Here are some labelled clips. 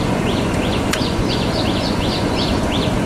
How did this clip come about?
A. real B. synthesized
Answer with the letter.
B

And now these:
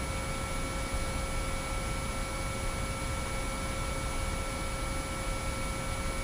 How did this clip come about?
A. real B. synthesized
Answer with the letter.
A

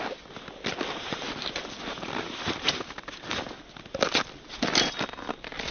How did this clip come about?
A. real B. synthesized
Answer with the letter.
A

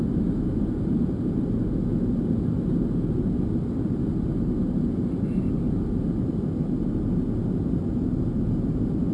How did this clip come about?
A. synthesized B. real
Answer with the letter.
B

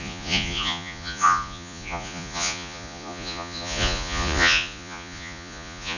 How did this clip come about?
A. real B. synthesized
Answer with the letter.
B